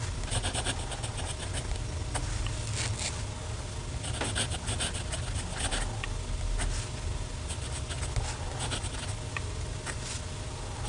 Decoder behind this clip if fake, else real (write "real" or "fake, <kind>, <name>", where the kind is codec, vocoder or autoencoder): real